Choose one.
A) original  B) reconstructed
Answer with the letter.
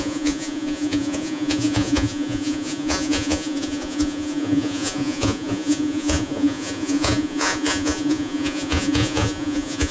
B